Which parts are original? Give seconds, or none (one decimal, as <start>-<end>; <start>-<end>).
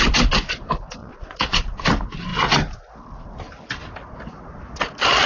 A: 0.0-1.0; 1.8-5.3